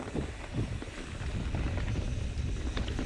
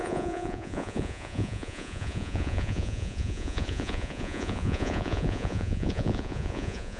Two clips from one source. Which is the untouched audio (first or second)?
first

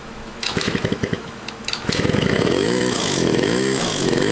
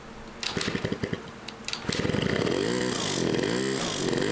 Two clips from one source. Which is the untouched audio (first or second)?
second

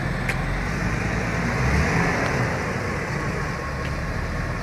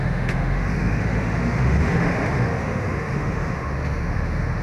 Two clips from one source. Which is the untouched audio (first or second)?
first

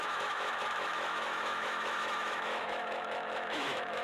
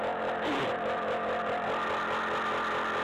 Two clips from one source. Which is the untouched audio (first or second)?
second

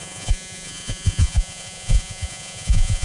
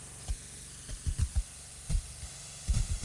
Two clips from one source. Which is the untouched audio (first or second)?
second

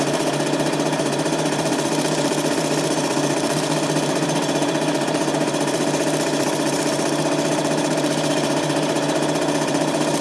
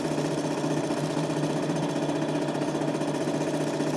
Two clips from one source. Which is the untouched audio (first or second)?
second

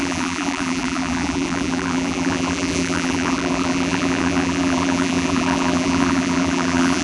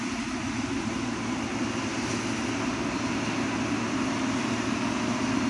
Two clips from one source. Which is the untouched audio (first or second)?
second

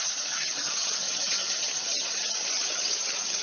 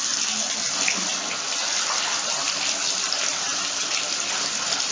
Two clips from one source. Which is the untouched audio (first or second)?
second